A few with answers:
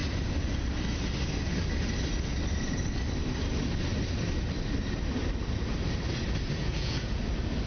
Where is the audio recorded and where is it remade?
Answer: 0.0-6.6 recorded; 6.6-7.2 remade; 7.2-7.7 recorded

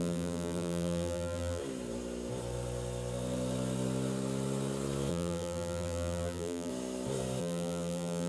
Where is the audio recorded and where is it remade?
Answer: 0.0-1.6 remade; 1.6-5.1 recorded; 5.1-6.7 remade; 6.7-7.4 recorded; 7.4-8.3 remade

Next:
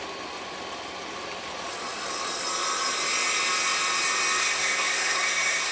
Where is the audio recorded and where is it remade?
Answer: 0.0-4.4 recorded; 4.4-5.7 remade